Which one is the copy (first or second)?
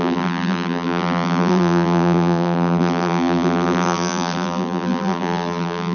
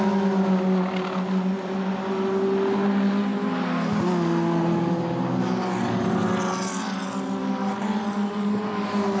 first